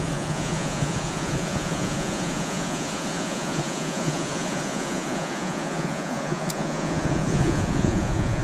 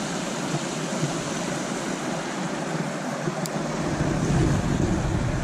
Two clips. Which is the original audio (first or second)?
second